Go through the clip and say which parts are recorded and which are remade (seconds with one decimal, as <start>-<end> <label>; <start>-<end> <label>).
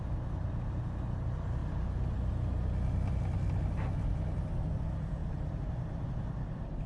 0.0-6.9 recorded